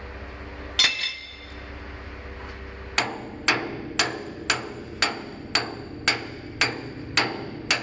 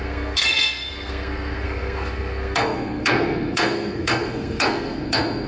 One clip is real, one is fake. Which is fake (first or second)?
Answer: second